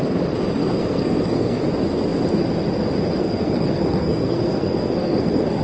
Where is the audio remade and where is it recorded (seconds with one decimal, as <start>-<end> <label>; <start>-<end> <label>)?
0.0-0.6 recorded; 0.6-1.6 remade; 1.6-3.2 recorded; 3.2-5.6 remade